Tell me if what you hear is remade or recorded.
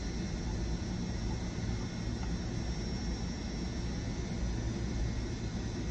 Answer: recorded